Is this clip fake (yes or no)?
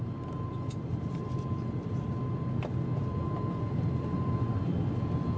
yes